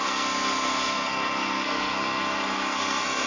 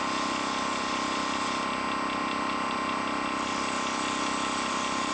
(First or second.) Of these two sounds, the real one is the second